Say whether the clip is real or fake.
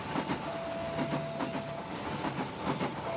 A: real